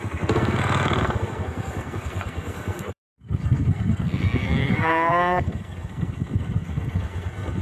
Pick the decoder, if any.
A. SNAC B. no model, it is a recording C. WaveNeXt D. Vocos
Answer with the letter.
A